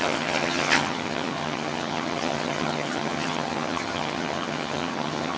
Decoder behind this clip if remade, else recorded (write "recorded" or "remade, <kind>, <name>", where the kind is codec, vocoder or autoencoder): remade, vocoder, HiFi-GAN